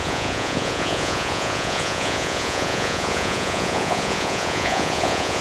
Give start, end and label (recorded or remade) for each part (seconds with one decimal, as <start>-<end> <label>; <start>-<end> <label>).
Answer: 0.0-5.4 remade